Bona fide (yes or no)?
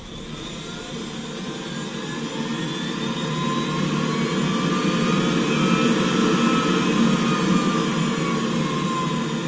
yes